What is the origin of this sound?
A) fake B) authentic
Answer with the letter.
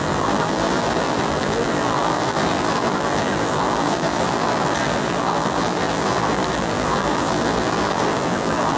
A